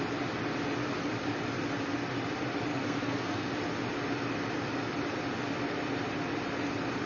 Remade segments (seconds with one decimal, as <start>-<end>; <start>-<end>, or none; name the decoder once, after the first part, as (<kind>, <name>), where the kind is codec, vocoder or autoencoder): 2.7-3.5 (codec, SNAC)